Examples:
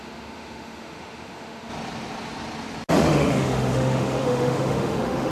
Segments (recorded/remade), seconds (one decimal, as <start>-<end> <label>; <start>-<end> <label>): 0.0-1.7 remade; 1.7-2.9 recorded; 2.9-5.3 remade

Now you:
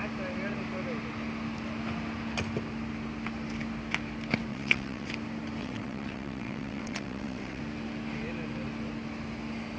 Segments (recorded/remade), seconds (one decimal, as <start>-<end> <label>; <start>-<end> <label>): 0.0-4.5 recorded; 4.5-5.1 remade; 5.1-5.6 recorded; 5.6-7.6 remade; 7.6-9.8 recorded

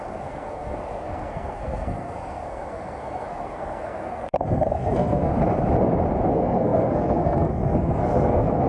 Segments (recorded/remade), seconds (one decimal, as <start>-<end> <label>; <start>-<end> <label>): 0.0-5.3 remade; 5.3-6.3 recorded; 6.3-8.7 remade

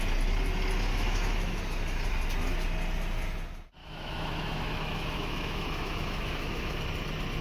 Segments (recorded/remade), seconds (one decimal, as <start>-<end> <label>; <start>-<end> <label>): 0.0-0.9 recorded; 0.9-1.6 remade; 1.6-3.8 recorded; 3.8-6.8 remade; 6.8-7.4 recorded

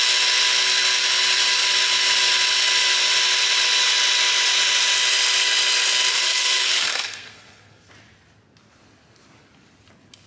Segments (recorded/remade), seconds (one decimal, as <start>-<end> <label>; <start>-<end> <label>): 0.0-6.1 recorded; 6.1-7.9 remade; 7.9-10.3 recorded

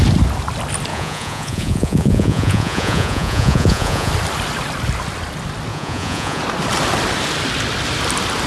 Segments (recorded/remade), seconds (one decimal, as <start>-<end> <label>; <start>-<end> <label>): 0.0-0.9 recorded; 0.9-4.1 remade; 4.1-5.7 recorded; 5.7-6.4 remade; 6.4-8.5 recorded

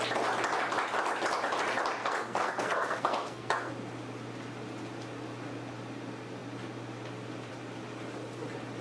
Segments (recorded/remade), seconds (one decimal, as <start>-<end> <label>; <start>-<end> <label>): 0.0-2.0 recorded; 2.0-3.7 remade; 3.7-8.8 recorded

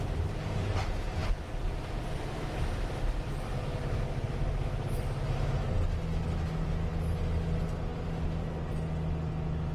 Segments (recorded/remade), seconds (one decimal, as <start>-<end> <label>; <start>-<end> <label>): 0.0-9.7 recorded